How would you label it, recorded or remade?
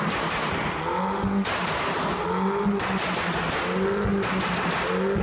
recorded